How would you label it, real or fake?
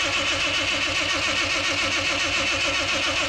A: real